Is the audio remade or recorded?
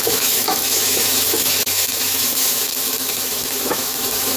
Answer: remade